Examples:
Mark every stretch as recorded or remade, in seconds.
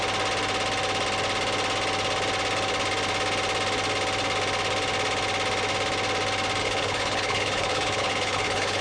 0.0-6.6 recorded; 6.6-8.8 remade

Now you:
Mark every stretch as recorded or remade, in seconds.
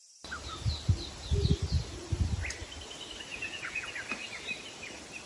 0.0-3.3 recorded; 3.3-3.9 remade; 3.9-5.3 recorded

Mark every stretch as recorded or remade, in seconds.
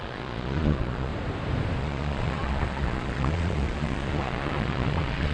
0.0-1.1 remade; 1.1-1.8 recorded; 1.8-5.3 remade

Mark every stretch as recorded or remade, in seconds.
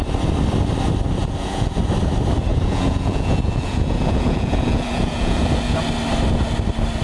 0.0-1.2 recorded; 1.2-1.8 remade; 1.8-2.5 recorded; 2.5-5.7 remade; 5.7-7.0 recorded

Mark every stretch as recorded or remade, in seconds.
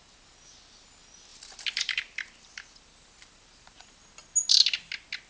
0.0-1.3 recorded; 1.3-4.0 remade; 4.0-5.3 recorded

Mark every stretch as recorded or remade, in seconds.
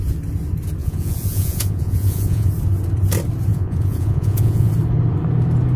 0.0-0.8 recorded; 0.8-2.5 remade; 2.5-3.5 recorded; 3.5-4.7 remade; 4.7-5.8 recorded